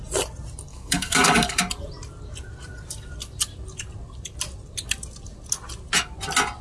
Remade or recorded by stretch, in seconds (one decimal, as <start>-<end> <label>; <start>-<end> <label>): 0.0-0.7 recorded; 0.7-1.6 remade; 1.6-6.6 recorded